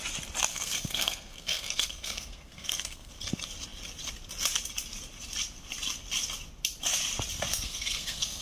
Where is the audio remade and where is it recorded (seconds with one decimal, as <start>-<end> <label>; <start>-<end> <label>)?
0.0-0.5 recorded; 0.5-3.1 remade; 3.1-7.5 recorded; 7.5-8.4 remade